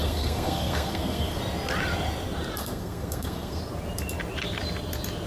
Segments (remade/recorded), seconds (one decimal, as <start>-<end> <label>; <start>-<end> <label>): 0.0-1.4 remade; 1.4-2.6 recorded; 2.6-3.6 remade; 3.6-5.3 recorded

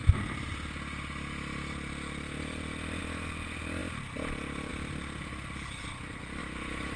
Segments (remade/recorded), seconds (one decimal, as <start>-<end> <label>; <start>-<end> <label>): 0.0-6.4 recorded; 6.4-7.0 remade

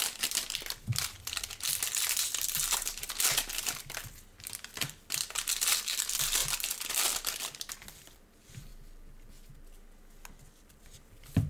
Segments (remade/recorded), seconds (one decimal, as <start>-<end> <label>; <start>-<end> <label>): 0.0-8.7 remade; 8.7-10.6 recorded; 10.6-11.5 remade

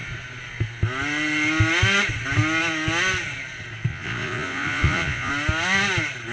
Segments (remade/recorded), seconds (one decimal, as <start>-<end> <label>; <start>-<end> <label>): 0.0-3.9 recorded; 3.9-5.3 remade; 5.3-6.3 recorded

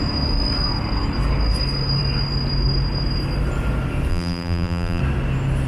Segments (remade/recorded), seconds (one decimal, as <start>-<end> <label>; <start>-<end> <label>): 0.0-4.1 recorded; 4.1-5.0 remade; 5.0-5.7 recorded

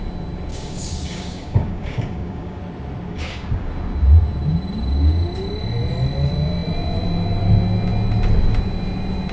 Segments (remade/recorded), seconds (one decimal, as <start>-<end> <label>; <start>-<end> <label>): 0.0-0.5 recorded; 0.5-2.6 remade; 2.6-3.1 recorded; 3.1-3.7 remade; 3.7-9.3 recorded

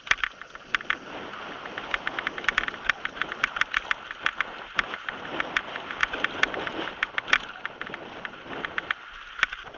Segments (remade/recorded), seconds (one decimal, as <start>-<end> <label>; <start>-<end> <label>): 0.0-9.8 recorded